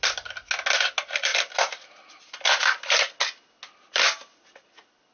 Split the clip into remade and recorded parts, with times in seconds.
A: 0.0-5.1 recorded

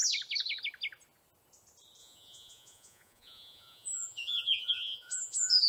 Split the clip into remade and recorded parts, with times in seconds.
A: 0.0-2.0 recorded; 2.0-5.7 remade

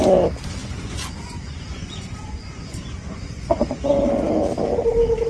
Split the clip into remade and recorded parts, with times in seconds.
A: 0.0-0.6 recorded; 0.6-3.8 remade; 3.8-5.3 recorded

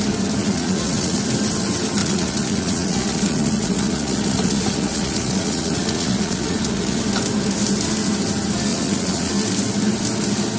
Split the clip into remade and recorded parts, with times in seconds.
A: 0.0-0.4 recorded; 0.4-1.2 remade; 1.2-2.0 recorded; 2.0-7.0 remade; 7.0-8.7 recorded; 8.7-9.3 remade; 9.3-10.6 recorded

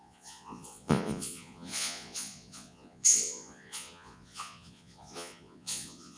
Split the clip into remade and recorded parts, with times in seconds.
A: 0.0-6.2 remade

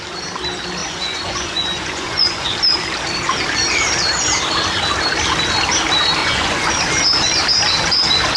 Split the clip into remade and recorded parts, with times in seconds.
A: 0.0-0.8 recorded; 0.8-2.5 remade; 2.5-6.2 recorded; 6.2-6.7 remade; 6.7-8.4 recorded

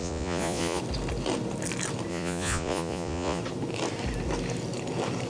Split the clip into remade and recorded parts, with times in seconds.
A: 0.0-0.8 remade; 0.8-2.1 recorded; 2.1-3.4 remade; 3.4-5.3 recorded